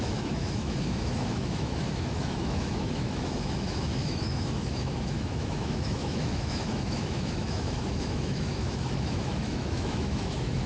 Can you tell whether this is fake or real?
fake